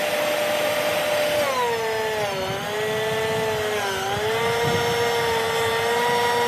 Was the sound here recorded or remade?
recorded